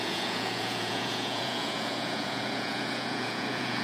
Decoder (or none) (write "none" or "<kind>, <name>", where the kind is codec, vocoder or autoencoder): vocoder, Vocos